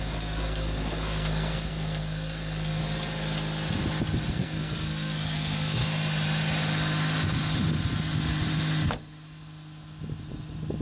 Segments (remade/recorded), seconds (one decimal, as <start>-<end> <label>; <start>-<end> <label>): 0.0-2.8 remade; 2.8-4.3 recorded; 4.3-5.8 remade; 5.8-10.8 recorded